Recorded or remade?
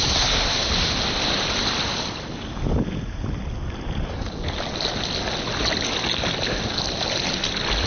recorded